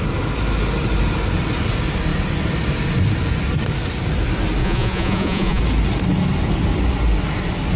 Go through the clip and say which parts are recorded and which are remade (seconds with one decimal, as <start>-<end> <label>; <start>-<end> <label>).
0.0-4.6 recorded; 4.6-5.6 remade; 5.6-7.8 recorded